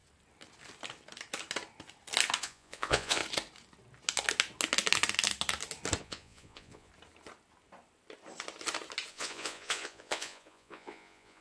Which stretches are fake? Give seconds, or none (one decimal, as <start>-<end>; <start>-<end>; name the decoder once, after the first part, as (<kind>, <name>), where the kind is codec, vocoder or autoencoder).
2.4-3.2 (vocoder, Vocos); 6.0-6.9; 9.1-11.4